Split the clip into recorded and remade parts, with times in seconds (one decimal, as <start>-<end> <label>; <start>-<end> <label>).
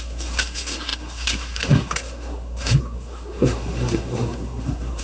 0.0-5.0 remade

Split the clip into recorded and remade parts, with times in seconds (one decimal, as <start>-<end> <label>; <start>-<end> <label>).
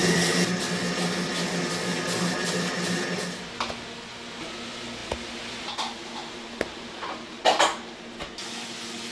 0.0-9.1 recorded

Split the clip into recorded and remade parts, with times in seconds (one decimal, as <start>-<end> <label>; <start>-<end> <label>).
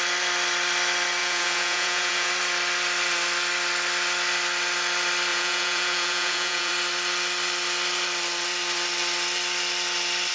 0.0-1.2 recorded; 1.2-2.3 remade; 2.3-5.3 recorded; 5.3-6.7 remade; 6.7-10.3 recorded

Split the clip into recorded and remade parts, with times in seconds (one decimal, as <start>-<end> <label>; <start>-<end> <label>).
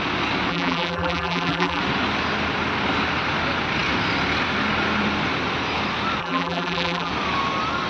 0.0-0.5 recorded; 0.5-1.8 remade; 1.8-6.2 recorded; 6.2-7.1 remade; 7.1-7.9 recorded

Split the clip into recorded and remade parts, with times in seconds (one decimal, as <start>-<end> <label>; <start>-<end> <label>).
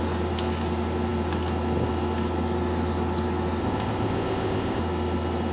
0.0-3.6 recorded; 3.6-4.8 remade; 4.8-5.5 recorded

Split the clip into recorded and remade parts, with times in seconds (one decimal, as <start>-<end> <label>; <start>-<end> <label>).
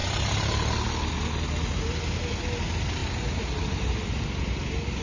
0.0-5.0 recorded